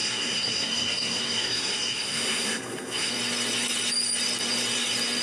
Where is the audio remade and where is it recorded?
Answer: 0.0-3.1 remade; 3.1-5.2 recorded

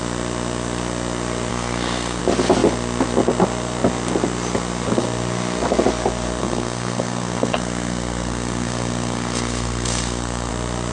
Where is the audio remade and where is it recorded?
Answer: 0.0-1.5 recorded; 1.5-2.2 remade; 2.2-6.4 recorded; 6.4-10.5 remade; 10.5-10.9 recorded